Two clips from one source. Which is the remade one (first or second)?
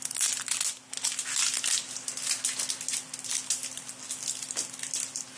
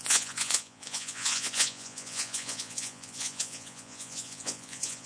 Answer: second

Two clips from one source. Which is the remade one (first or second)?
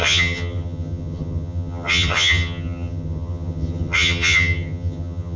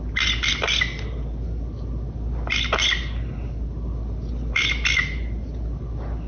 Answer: first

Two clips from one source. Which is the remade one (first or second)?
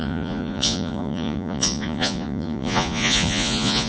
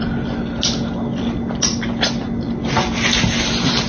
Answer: first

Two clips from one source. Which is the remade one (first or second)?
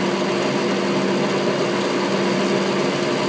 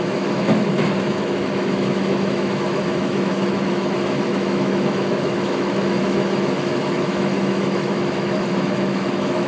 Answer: second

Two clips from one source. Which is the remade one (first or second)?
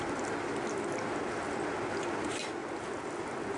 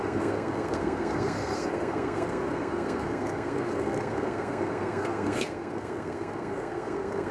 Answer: second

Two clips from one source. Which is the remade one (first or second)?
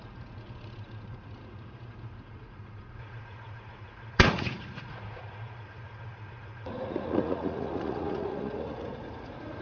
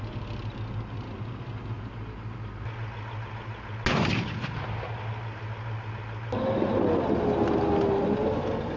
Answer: first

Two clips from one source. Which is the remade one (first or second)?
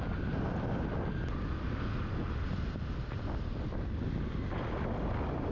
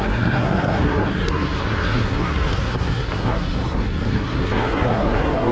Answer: second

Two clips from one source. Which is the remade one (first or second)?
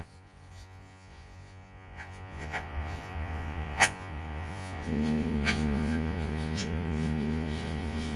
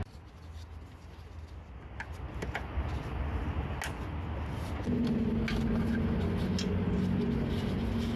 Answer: first